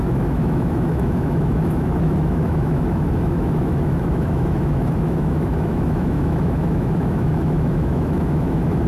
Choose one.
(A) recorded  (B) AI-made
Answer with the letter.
B